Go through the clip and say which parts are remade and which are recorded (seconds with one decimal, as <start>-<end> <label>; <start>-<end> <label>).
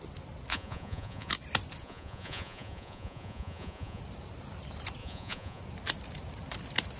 0.0-0.5 recorded; 0.5-1.3 remade; 1.3-1.8 recorded; 1.8-4.0 remade; 4.0-5.0 recorded; 5.0-5.6 remade; 5.6-7.0 recorded